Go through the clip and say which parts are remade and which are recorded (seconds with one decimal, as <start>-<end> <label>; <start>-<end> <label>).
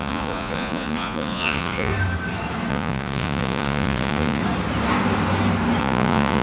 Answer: 0.0-1.9 remade; 1.9-2.7 recorded; 2.7-4.4 remade; 4.4-5.8 recorded; 5.8-6.4 remade